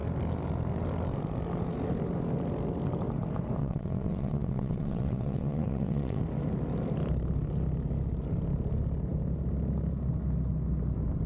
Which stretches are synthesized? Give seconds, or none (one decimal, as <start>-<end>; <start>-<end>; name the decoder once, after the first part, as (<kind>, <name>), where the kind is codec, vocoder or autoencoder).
3.6-6.2 (vocoder, WaveNeXt)